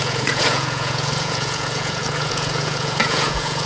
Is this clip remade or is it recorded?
remade